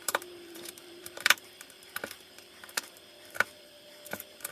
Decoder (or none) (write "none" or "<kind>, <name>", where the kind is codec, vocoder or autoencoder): vocoder, BigVGAN v2